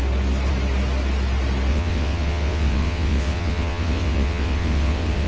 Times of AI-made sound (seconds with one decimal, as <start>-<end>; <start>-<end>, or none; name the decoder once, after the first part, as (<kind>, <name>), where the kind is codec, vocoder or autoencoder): 1.7-5.3 (vocoder, WaveNeXt)